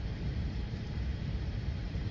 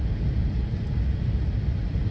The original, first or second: second